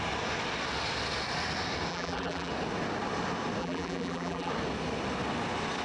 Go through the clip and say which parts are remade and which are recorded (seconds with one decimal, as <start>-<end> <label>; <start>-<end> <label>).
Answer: 0.0-1.9 recorded; 1.9-2.5 remade; 2.5-3.6 recorded; 3.6-4.5 remade; 4.5-5.8 recorded